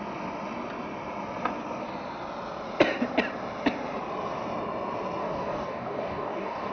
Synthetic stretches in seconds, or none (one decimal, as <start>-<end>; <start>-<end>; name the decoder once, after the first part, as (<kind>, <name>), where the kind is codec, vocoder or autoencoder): 5.2-6.7 (codec, DAC)